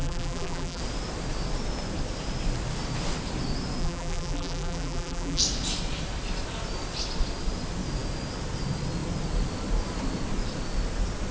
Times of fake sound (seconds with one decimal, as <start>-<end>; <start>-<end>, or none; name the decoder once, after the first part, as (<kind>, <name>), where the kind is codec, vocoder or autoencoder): 0.0-0.8 (vocoder, BigVGAN v2); 3.8-5.4